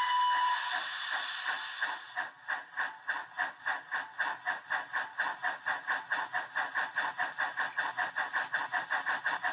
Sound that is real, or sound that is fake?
real